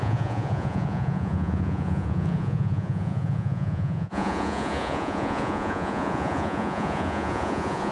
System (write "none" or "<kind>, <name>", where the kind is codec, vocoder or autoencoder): vocoder, Vocos